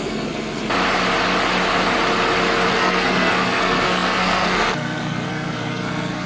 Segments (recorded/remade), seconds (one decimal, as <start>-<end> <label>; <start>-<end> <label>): 0.0-0.6 remade; 0.6-2.7 recorded; 2.7-6.3 remade